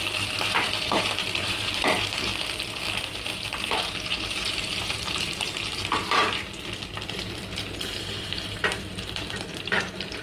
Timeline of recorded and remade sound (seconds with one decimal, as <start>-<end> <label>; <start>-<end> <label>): 0.0-2.3 remade; 2.3-3.0 recorded; 3.0-6.2 remade; 6.2-7.1 recorded; 7.1-10.2 remade